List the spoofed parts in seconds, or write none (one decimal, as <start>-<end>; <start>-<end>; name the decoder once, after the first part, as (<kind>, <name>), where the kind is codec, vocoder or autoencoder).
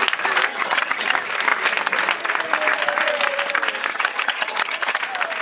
0.5-1.1 (vocoder, HiFi-GAN); 3.9-5.0